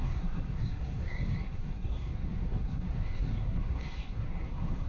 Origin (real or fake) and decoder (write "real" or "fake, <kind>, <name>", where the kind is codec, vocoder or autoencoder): fake, codec, SNAC